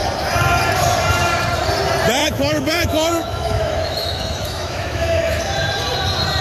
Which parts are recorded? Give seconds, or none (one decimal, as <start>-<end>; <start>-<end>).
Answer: 0.0-2.2; 5.4-6.4